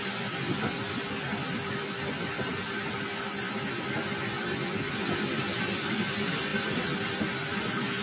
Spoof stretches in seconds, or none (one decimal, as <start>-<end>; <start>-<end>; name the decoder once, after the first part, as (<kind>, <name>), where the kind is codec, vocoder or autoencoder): none